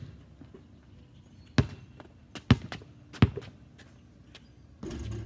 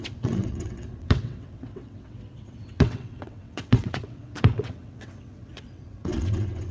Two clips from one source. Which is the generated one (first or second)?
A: second